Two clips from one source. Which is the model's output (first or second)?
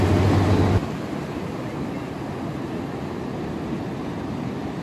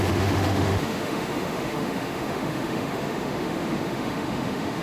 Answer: second